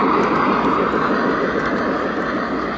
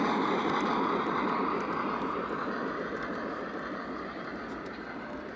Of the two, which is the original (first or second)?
first